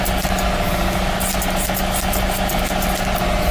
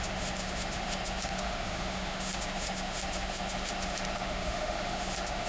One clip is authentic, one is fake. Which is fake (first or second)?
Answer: second